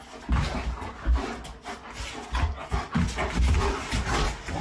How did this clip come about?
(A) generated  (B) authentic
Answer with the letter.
B